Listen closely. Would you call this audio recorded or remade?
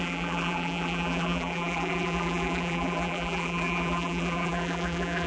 remade